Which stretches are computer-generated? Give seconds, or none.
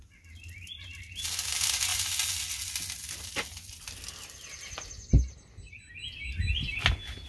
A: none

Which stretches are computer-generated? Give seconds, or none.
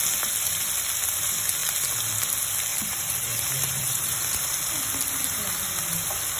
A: 2.7-4.7 (vocoder, BigVGAN v2)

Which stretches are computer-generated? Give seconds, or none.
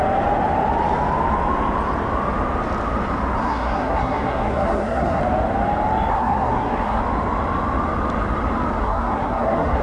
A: 3.4-5.2 (codec, SNAC); 6.1-7.0; 8.8-9.8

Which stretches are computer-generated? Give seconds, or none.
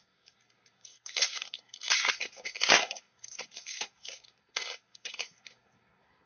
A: 0.0-6.3 (codec, SNAC)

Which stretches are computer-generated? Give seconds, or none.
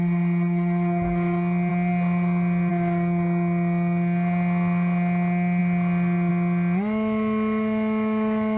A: none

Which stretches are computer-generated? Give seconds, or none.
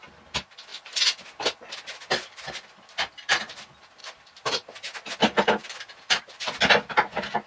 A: 4.0-4.9 (vocoder, BigVGAN v2); 5.6-6.2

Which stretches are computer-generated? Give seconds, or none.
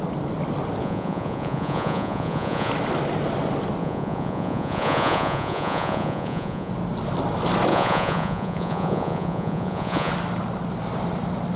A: 0.8-2.7 (vocoder, Vocos); 3.8-6.7; 7.7-10.1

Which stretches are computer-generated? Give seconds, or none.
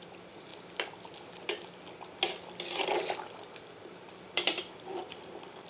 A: 0.0-0.5 (vocoder, BigVGAN v2); 3.4-5.7